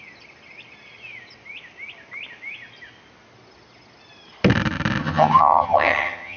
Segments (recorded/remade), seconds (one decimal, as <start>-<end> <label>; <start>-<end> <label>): 0.0-5.0 recorded; 5.0-6.4 remade